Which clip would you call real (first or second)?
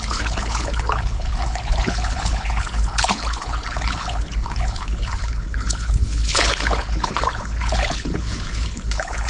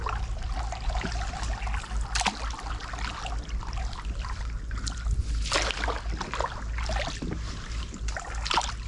second